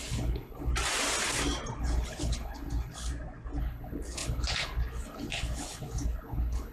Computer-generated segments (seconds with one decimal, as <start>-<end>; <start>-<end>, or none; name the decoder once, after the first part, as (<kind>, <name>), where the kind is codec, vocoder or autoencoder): 0.0-0.7 (codec, HILCodec); 1.8-3.1; 3.6-6.7